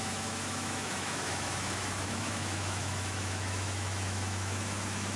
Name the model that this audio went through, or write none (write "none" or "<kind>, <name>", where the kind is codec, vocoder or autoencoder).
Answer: autoencoder, DAC-VAE